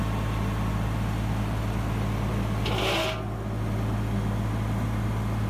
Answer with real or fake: real